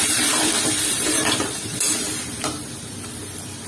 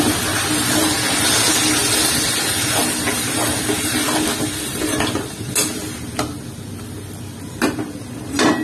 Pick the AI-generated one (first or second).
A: first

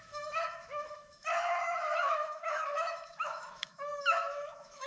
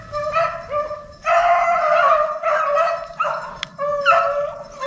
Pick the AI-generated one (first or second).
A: first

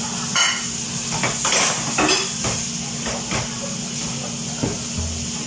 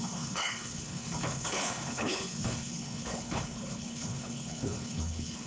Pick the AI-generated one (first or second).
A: second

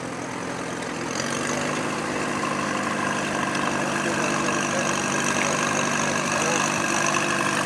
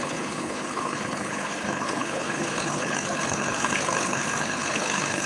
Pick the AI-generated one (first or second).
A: second